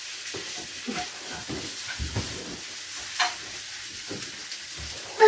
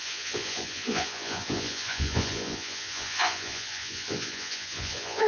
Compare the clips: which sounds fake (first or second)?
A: second